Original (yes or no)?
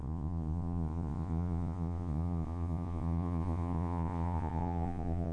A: no